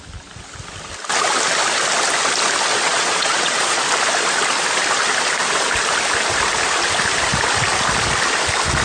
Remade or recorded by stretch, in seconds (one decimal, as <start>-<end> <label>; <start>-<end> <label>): 0.0-2.7 recorded; 2.7-3.8 remade; 3.8-8.8 recorded